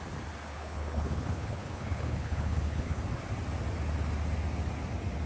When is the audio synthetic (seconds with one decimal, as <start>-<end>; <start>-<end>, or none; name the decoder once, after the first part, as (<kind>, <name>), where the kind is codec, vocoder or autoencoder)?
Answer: 0.5-3.0 (codec, HILCodec)